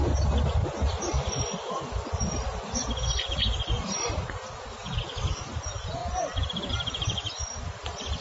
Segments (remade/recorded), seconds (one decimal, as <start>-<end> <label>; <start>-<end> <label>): 0.0-8.2 remade